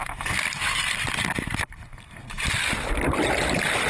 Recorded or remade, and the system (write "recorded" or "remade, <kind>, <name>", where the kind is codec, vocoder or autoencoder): recorded